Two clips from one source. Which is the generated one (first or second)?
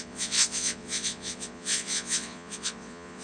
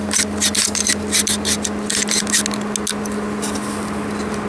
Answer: first